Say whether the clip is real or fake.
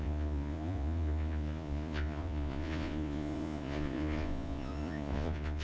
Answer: fake